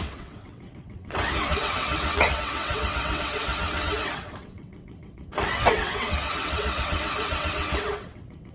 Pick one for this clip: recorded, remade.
remade